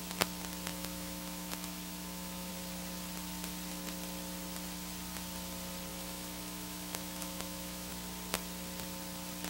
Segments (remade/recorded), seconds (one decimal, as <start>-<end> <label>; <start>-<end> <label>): 0.0-0.7 recorded; 0.7-2.5 remade; 2.5-5.9 recorded; 5.9-7.9 remade; 7.9-9.5 recorded

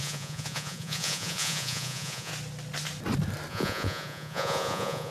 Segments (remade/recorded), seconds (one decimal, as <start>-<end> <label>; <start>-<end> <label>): 0.0-2.3 remade; 2.3-3.5 recorded; 3.5-5.1 remade